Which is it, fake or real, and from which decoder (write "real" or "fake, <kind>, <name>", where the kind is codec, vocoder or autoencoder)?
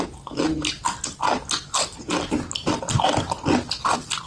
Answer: real